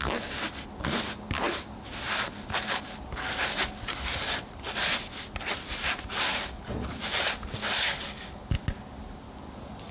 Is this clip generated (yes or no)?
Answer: no